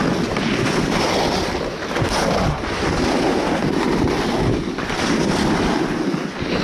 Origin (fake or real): real